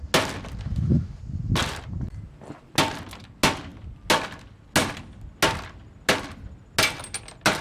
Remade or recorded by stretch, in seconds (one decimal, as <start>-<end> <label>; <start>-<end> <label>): 0.0-0.6 recorded; 0.6-1.2 remade; 1.2-7.6 recorded